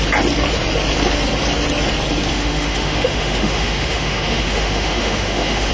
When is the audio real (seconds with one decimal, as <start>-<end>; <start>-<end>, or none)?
0.0-2.3